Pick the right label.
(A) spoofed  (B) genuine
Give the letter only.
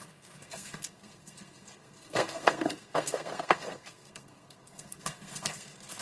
A